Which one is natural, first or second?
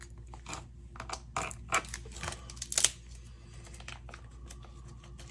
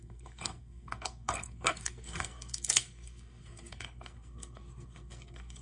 first